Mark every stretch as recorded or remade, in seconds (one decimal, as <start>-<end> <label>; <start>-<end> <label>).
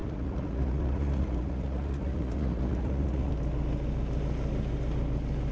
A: 0.0-3.3 remade; 3.3-5.5 recorded